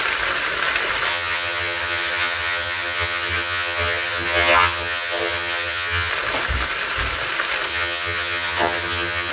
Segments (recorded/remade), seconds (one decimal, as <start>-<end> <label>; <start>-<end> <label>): 0.0-1.1 recorded; 1.1-6.1 remade; 6.1-7.7 recorded; 7.7-9.3 remade